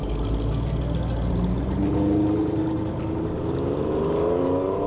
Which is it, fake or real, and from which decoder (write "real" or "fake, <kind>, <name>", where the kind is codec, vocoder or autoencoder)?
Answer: real